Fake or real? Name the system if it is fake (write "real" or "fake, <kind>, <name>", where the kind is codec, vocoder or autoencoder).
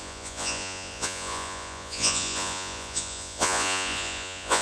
fake, vocoder, Vocos